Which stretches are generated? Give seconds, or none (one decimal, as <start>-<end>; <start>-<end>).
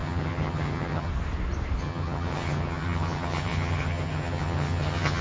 0.0-1.1; 1.8-5.2